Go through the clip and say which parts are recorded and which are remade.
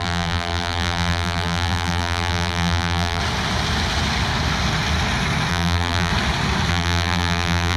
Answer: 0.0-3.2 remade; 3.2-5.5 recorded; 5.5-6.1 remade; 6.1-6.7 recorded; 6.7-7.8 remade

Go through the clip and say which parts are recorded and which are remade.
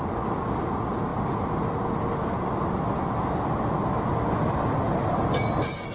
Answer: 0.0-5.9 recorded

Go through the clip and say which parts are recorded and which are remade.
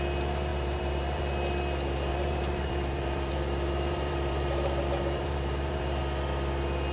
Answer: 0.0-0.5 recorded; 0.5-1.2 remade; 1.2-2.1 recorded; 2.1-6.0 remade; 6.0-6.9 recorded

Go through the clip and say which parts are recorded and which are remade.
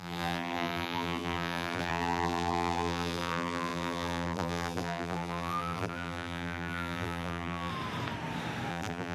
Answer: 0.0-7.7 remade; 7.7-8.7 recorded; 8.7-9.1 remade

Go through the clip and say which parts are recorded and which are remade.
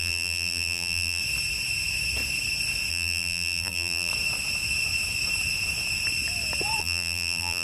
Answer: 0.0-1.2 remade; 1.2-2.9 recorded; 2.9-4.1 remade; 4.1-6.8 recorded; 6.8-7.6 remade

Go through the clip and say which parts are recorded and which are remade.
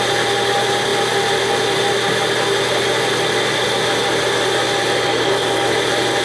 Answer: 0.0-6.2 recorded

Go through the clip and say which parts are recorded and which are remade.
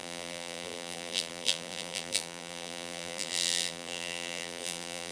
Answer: 0.0-5.1 remade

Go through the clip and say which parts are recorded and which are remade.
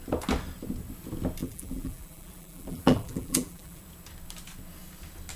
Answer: 0.0-1.4 recorded; 1.4-3.8 remade; 3.8-5.4 recorded